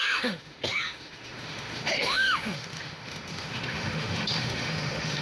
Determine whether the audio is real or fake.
fake